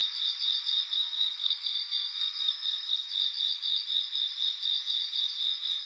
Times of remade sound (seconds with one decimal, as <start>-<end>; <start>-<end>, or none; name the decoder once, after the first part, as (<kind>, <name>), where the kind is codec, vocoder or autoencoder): 0.9-3.1 (codec, SNAC)